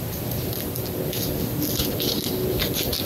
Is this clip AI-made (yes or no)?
no